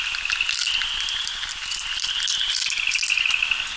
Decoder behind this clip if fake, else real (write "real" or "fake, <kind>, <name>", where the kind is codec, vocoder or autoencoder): real